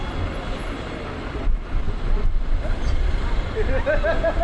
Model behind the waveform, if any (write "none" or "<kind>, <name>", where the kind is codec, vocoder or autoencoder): none